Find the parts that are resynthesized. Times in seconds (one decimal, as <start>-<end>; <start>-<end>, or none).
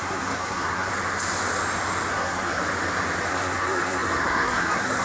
0.0-0.9; 2.1-2.6; 3.3-5.0